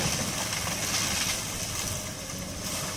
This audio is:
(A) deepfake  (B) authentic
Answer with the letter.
B